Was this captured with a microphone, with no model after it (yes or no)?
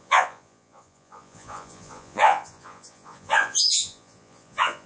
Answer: no